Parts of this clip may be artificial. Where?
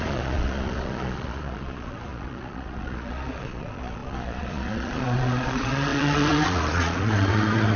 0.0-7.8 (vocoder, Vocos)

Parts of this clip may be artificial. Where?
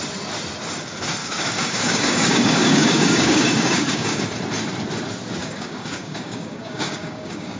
1.2-4.2 (codec, DAC); 5.4-7.6